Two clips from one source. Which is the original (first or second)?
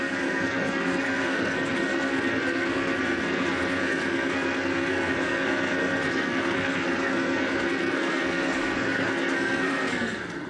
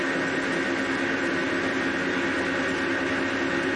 second